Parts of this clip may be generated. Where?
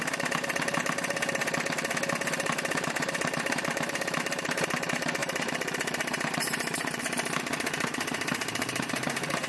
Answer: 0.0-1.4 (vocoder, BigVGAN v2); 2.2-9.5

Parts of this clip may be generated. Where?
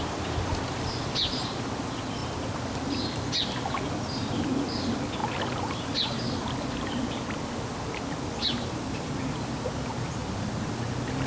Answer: none